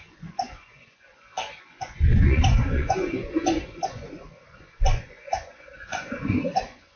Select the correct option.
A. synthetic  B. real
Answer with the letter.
A